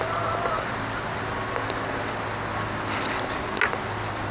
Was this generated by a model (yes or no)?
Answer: no